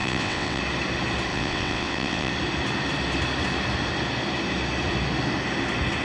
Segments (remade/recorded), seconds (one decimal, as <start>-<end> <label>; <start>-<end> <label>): 0.0-0.6 remade; 0.6-1.3 recorded; 1.3-2.3 remade; 2.3-6.0 recorded